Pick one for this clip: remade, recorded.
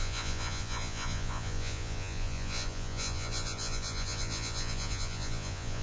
remade